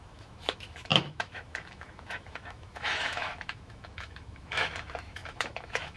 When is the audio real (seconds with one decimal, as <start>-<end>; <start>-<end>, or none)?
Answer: none